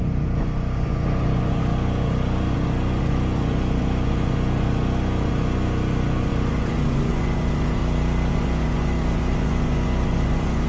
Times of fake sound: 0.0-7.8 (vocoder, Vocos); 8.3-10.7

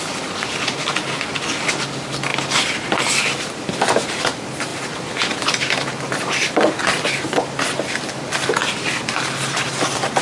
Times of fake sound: none

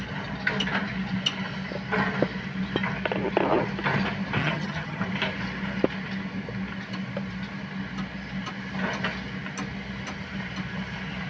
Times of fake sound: 4.4-5.0 (vocoder, HiFi-GAN)

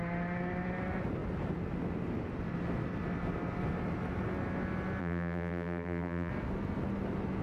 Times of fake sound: 5.0-6.3 (vocoder, BigVGAN v2)

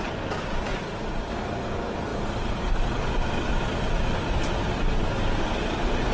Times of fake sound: 0.7-1.3 (vocoder, Vocos)

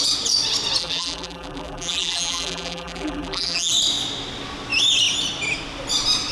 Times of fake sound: 0.8-3.7 (vocoder, BigVGAN v2)

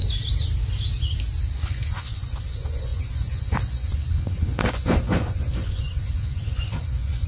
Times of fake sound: 1.7-7.3 (vocoder, Vocos)